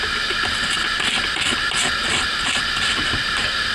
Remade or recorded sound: recorded